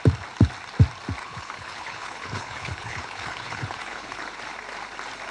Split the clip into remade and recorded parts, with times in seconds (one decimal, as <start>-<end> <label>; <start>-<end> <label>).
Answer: 0.0-1.2 recorded; 1.2-4.4 remade; 4.4-5.3 recorded